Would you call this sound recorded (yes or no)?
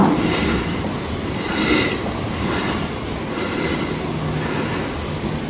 yes